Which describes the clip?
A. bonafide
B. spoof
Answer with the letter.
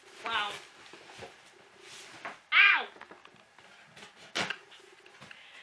A